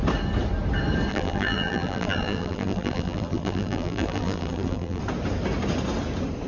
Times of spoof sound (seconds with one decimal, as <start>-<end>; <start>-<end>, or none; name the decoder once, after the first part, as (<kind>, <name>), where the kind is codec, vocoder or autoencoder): 1.1-5.0 (vocoder, BigVGAN v2)